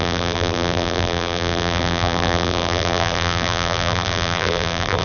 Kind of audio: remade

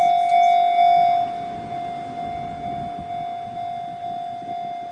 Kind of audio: recorded